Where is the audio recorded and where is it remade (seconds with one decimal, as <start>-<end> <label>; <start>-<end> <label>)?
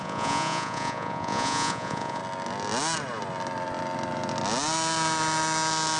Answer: 0.0-2.2 remade; 2.2-6.0 recorded